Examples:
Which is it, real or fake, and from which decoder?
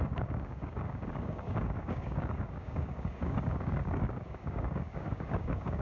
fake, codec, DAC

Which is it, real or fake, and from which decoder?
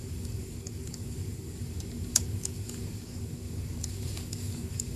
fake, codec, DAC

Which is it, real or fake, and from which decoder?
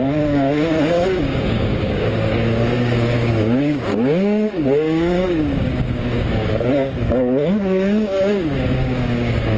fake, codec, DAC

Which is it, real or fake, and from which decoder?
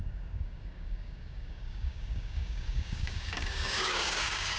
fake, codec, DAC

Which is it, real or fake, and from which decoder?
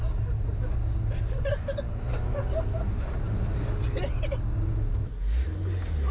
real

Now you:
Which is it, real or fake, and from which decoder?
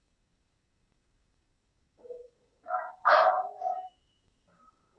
fake, codec, DAC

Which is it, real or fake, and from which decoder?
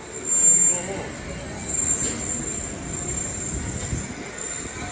real